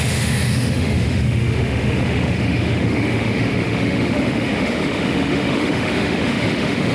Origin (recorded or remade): remade